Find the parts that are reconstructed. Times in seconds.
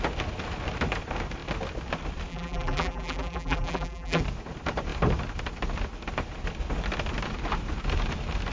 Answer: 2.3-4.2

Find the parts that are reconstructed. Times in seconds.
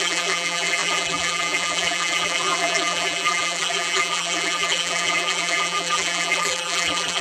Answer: 0.0-7.2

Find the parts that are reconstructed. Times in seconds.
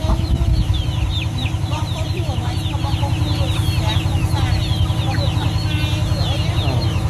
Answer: 0.0-2.6